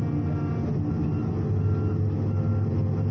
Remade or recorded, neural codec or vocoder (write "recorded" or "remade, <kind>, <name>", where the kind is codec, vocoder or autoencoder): recorded